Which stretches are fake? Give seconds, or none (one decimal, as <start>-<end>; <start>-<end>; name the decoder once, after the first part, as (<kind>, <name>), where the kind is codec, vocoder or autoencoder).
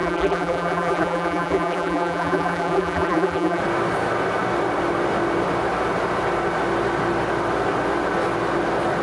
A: 0.0-3.6 (vocoder, BigVGAN v2)